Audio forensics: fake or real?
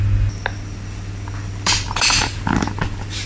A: fake